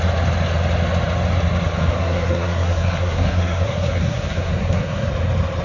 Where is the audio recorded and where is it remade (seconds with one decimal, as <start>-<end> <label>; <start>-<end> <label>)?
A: 0.0-1.8 recorded; 1.8-5.1 remade; 5.1-5.6 recorded